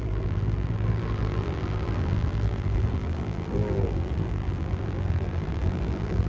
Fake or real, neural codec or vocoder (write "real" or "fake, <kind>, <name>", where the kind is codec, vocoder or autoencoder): fake, vocoder, BigVGAN v2